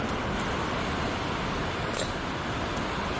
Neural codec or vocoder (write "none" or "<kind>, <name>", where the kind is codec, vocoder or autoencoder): none